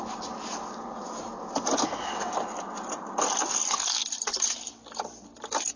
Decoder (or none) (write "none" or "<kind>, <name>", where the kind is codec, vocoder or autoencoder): none